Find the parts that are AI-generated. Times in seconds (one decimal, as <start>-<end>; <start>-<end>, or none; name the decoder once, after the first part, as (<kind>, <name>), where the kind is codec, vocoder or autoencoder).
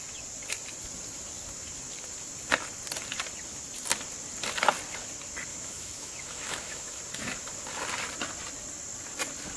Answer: 5.5-7.0 (autoencoder, DAC-VAE)